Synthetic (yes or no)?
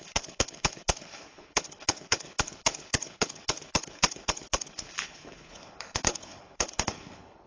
yes